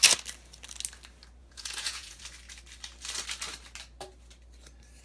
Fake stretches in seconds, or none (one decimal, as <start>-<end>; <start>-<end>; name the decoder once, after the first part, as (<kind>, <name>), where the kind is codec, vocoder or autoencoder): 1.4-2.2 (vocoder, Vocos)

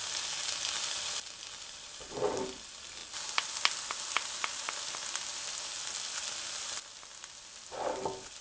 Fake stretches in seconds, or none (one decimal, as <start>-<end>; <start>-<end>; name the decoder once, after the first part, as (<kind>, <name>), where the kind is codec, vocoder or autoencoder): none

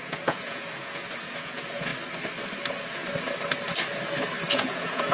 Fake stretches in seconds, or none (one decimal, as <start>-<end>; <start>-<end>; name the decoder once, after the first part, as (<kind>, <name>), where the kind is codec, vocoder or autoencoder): 0.0-1.9 (vocoder, Vocos); 4.5-5.1

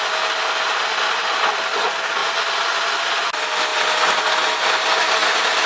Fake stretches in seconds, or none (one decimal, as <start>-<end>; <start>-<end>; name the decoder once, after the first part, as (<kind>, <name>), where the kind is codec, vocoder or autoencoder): none

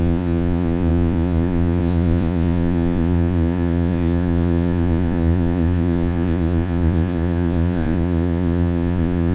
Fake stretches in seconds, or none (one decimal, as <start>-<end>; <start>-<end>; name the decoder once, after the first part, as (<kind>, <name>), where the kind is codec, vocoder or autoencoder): 0.0-9.3 (vocoder, Vocos)

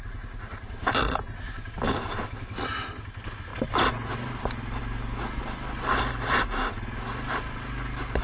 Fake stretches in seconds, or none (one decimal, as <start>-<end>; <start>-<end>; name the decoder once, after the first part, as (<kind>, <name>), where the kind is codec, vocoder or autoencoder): none